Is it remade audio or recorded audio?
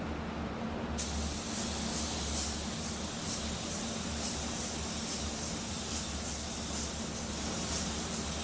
recorded